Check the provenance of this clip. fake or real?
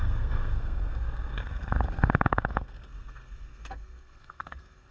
fake